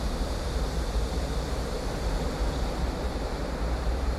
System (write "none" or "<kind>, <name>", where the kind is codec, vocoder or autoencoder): vocoder, BigVGAN v2